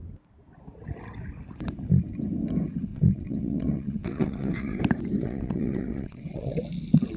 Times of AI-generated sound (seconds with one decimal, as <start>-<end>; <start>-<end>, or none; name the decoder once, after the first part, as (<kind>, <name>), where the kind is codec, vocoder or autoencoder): 2.9-4.8 (vocoder, WaveNeXt); 5.2-6.6